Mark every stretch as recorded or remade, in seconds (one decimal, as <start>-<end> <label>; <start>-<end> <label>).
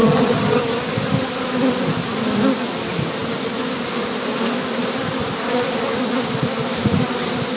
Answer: 0.0-0.6 remade; 0.6-7.6 recorded